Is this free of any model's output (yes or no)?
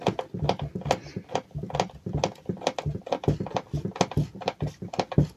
yes